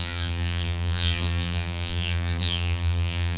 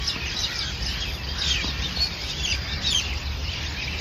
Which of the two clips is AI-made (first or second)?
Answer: first